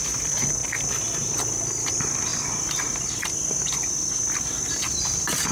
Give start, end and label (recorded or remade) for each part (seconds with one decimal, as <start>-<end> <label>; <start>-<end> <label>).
0.0-5.5 recorded